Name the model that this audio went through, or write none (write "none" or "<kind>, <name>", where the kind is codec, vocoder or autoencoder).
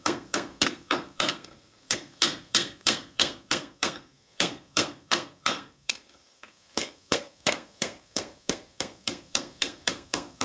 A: codec, SNAC